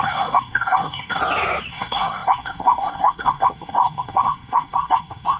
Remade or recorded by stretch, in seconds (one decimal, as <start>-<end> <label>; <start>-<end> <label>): 0.0-1.2 remade; 1.2-1.7 recorded; 1.7-5.4 remade